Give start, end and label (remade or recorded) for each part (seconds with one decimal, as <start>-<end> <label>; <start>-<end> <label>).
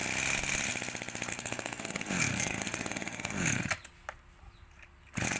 0.0-1.3 recorded; 1.3-3.6 remade; 3.6-5.4 recorded